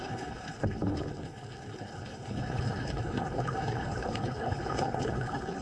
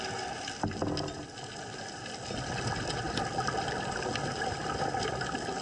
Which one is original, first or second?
second